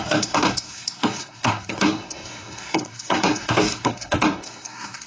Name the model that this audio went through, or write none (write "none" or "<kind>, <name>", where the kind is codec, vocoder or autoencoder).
codec, SNAC